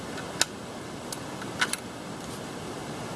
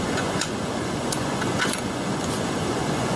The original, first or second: first